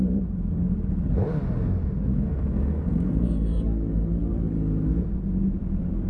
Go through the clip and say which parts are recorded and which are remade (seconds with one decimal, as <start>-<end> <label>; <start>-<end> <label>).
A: 0.0-2.1 recorded; 2.1-3.6 remade; 3.6-6.1 recorded